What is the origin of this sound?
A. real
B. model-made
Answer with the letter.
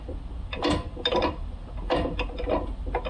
A